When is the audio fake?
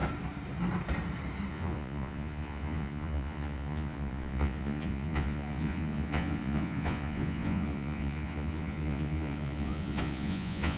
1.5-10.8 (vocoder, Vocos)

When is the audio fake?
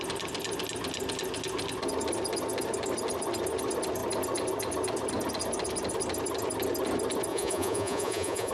7.3-8.5 (vocoder, Vocos)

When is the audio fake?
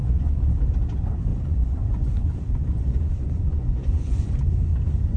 0.0-0.5 (vocoder, Vocos); 1.3-4.4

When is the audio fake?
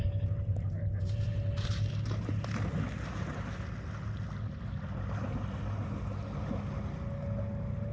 none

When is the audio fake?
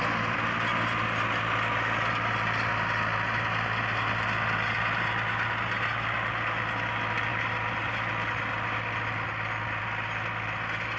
none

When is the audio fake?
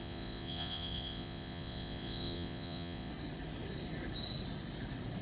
0.0-3.1 (vocoder, Vocos)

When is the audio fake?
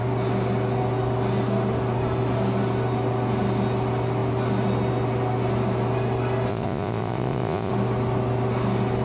6.5-7.7 (vocoder, Vocos)